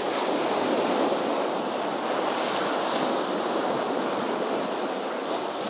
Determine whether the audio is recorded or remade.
recorded